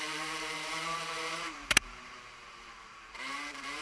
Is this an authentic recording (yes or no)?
no